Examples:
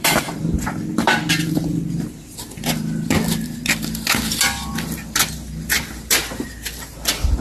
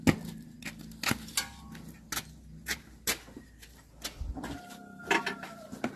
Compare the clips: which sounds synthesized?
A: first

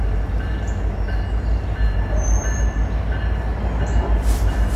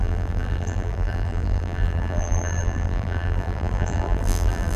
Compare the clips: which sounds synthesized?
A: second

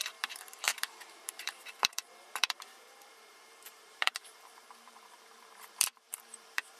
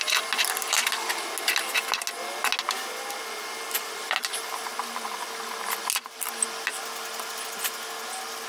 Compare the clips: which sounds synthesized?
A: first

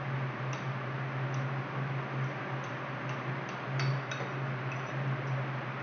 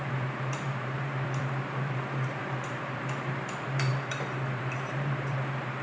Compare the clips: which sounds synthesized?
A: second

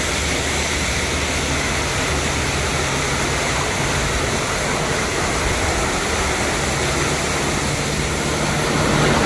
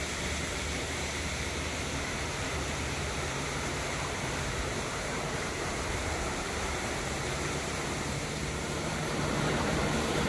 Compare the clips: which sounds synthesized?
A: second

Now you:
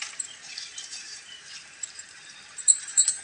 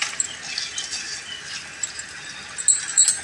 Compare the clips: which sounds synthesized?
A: first